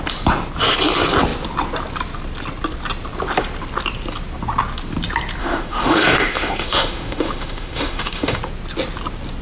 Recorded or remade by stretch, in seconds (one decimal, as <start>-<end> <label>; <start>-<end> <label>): 0.0-5.4 recorded; 5.4-8.4 remade; 8.4-9.4 recorded